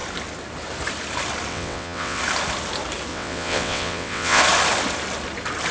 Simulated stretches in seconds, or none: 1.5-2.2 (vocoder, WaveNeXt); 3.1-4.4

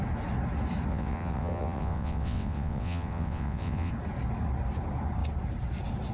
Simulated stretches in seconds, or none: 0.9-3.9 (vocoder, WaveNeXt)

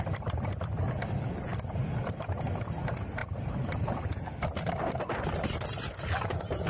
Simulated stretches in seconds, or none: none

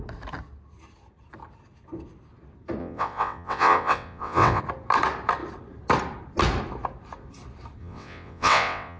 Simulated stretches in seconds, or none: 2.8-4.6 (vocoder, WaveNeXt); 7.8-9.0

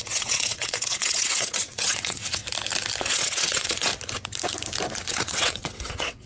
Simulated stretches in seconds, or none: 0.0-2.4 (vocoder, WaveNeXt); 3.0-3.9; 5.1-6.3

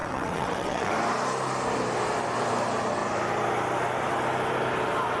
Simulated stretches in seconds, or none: 0.0-0.9 (vocoder, WaveNeXt)

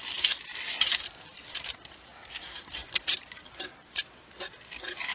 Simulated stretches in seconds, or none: none